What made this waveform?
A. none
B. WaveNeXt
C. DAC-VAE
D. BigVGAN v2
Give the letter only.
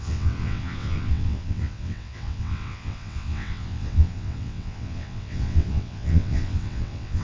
B